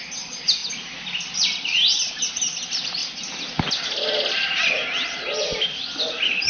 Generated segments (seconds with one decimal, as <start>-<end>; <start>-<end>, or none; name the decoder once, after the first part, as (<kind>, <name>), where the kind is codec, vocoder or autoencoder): none